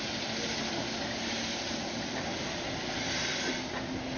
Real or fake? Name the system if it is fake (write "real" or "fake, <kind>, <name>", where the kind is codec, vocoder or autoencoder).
real